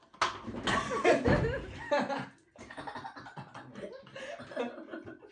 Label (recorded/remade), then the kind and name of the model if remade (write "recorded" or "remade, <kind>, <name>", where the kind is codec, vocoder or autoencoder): recorded